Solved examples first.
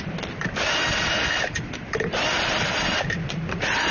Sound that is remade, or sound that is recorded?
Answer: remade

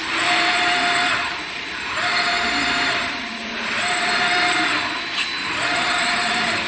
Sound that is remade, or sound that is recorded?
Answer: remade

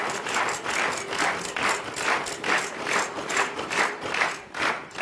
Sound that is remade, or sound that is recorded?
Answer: remade